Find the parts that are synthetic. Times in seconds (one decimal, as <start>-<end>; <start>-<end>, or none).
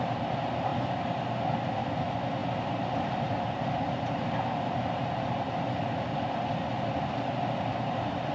none